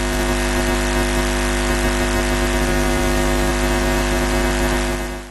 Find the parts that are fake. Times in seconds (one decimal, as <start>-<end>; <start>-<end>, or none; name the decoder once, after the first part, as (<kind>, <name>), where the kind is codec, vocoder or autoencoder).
2.7-3.5 (autoencoder, DAC-VAE)